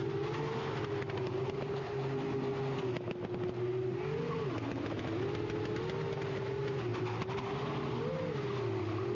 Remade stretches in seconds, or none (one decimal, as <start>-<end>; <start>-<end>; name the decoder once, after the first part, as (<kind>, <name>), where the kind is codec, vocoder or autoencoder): none